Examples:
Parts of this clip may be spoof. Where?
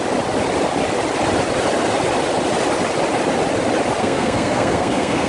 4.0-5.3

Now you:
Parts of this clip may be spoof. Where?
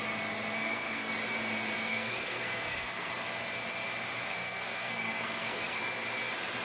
0.6-1.1; 1.8-3.1; 4.3-5.8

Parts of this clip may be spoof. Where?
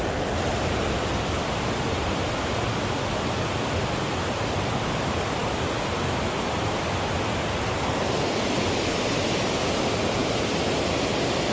none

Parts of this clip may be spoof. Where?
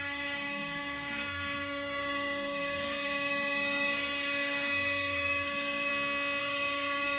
0.0-5.9; 6.4-7.2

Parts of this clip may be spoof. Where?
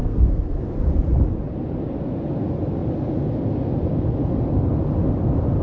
0.0-0.6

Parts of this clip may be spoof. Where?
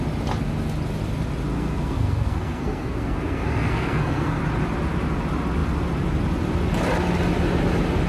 1.5-4.4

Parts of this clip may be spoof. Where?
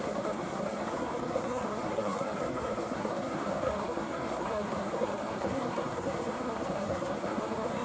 0.0-7.8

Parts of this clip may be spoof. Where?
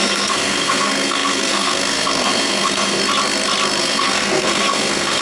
0.0-3.0; 3.8-5.2